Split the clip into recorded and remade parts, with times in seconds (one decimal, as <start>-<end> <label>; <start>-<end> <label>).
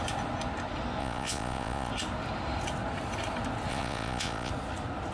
0.0-1.0 recorded; 1.0-1.9 remade; 1.9-3.7 recorded; 3.7-4.5 remade; 4.5-5.1 recorded